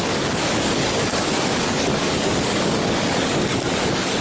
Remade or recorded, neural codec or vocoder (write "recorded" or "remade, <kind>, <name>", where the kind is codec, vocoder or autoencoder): remade, codec, DAC